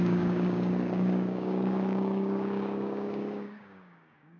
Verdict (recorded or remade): remade